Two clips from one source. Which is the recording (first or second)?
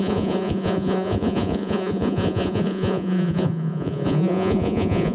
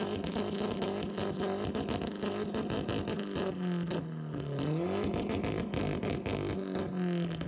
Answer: second